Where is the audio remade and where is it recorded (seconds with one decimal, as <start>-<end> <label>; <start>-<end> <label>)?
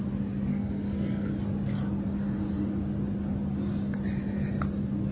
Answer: 0.0-0.5 recorded; 0.5-1.3 remade; 1.3-5.1 recorded